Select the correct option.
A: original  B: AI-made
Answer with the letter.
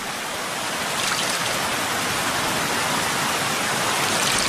A